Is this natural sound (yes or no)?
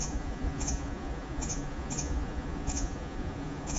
no